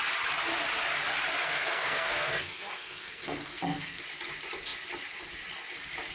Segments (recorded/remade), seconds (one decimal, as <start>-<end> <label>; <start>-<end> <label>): 0.0-1.4 recorded; 1.4-4.0 remade; 4.0-6.1 recorded